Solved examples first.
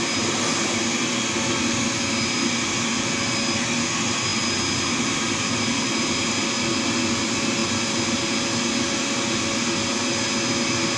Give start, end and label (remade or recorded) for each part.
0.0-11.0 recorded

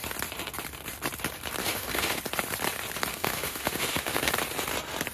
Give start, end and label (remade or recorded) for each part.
0.0-1.6 recorded; 1.6-2.2 remade; 2.2-3.1 recorded; 3.1-4.3 remade; 4.3-5.1 recorded

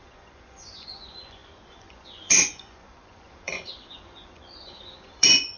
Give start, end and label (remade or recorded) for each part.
0.0-5.6 remade

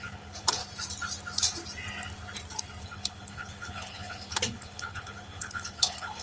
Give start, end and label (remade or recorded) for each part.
0.0-0.6 remade; 0.6-2.8 recorded; 2.8-6.2 remade